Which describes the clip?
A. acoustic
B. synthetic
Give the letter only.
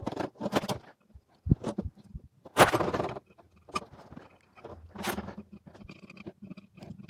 A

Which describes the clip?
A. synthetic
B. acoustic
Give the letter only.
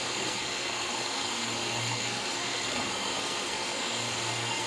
A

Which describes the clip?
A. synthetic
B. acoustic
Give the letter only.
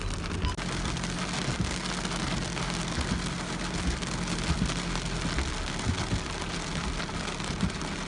B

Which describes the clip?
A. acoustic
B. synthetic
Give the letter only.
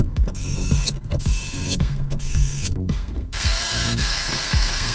B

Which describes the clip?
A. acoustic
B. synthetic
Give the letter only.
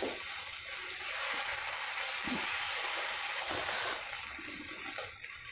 A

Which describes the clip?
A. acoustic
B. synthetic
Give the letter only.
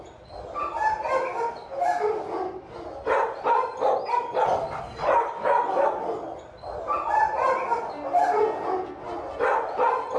A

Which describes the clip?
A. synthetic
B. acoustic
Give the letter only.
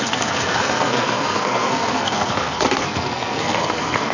A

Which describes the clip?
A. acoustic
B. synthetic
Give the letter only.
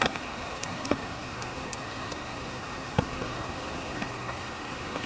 B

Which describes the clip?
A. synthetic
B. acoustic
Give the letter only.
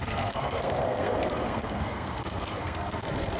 A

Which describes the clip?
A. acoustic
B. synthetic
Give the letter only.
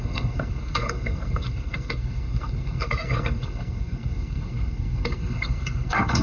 B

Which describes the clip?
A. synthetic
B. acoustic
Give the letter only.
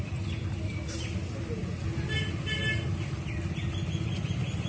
B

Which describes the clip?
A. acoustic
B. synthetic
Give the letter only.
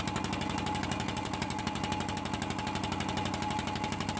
A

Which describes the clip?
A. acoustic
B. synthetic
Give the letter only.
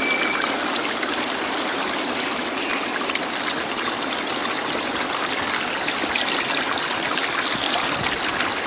A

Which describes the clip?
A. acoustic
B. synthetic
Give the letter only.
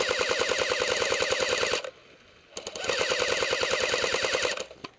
A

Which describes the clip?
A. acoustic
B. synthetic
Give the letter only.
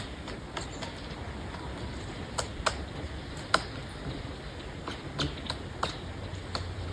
A